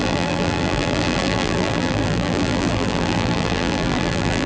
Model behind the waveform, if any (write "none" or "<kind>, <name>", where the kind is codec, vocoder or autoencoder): vocoder, BigVGAN v2